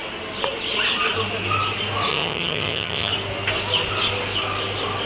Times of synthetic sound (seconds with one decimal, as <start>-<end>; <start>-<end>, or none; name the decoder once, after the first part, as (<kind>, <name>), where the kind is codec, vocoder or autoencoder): 2.1-3.1 (vocoder, HiFi-GAN)